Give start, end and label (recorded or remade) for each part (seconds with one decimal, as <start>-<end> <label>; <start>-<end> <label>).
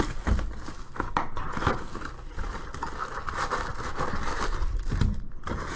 0.0-5.8 recorded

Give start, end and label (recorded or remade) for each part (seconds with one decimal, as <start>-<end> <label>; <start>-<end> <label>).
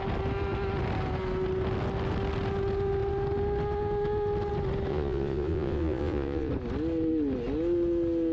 0.0-4.9 recorded; 4.9-6.5 remade; 6.5-8.3 recorded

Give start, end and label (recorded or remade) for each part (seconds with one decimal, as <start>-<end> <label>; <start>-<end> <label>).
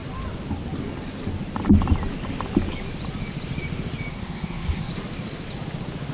0.0-4.1 recorded; 4.1-4.9 remade; 4.9-6.1 recorded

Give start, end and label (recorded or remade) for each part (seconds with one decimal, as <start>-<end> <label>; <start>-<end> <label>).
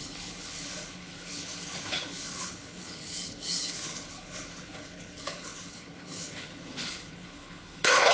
0.0-8.1 remade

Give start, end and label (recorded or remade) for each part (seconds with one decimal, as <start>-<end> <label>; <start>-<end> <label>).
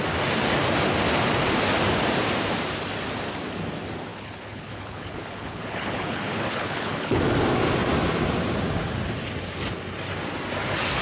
0.0-4.1 recorded; 4.1-7.2 remade; 7.2-11.0 recorded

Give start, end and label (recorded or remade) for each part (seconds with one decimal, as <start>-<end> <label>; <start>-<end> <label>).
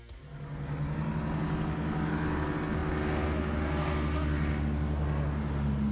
0.0-5.9 recorded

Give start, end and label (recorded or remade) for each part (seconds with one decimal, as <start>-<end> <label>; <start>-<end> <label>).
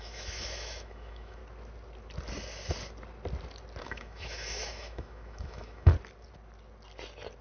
0.0-1.4 remade; 1.4-3.8 recorded; 3.8-5.9 remade; 5.9-7.4 recorded